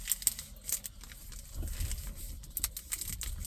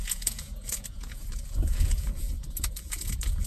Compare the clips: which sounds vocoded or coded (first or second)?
second